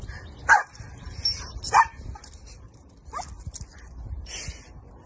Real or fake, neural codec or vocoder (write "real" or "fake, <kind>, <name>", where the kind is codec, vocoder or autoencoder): real